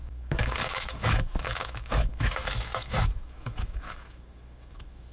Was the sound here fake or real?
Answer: fake